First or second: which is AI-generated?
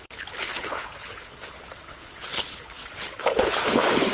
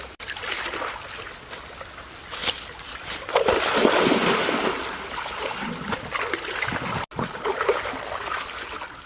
first